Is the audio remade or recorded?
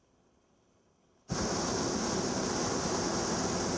recorded